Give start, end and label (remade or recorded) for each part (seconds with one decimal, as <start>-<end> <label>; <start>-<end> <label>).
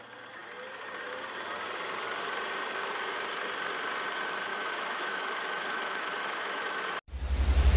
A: 0.0-4.5 recorded; 4.5-6.8 remade; 6.8-7.8 recorded